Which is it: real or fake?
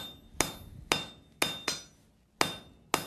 real